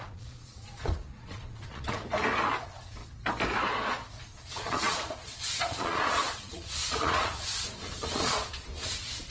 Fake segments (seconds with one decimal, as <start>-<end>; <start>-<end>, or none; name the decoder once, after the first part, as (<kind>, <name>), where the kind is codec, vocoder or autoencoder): 0.0-2.0 (vocoder, Vocos); 2.6-3.0; 4.2-9.3